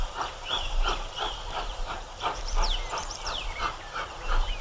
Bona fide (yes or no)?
no